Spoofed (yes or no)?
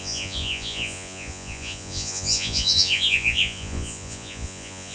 yes